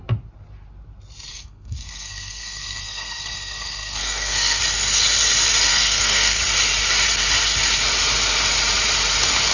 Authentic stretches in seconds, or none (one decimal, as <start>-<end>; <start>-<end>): 0.0-1.3; 4.6-5.7; 6.4-9.5